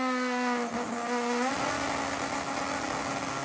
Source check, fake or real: real